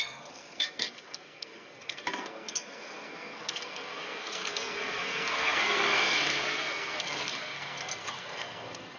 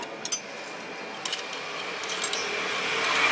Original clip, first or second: second